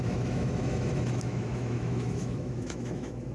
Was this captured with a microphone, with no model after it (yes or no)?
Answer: no